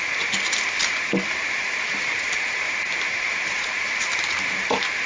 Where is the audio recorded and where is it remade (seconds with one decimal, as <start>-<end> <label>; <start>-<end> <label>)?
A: 0.0-1.1 recorded; 1.1-4.2 remade; 4.2-5.1 recorded